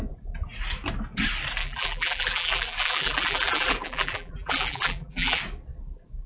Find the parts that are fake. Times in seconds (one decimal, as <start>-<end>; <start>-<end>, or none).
1.6-5.4

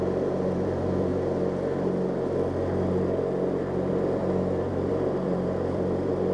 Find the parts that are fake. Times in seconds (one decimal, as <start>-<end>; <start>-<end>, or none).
0.0-1.1; 3.9-6.3

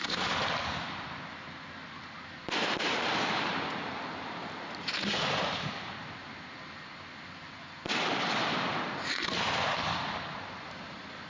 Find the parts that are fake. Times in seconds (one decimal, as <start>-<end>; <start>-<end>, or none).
2.6-4.9